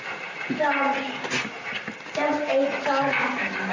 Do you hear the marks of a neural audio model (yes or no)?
no